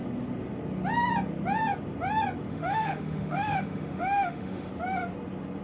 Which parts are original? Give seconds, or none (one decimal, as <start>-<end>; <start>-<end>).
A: 0.0-2.5; 4.7-5.6